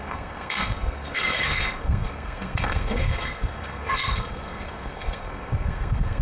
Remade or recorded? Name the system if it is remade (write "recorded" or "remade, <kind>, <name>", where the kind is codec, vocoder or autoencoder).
remade, codec, SNAC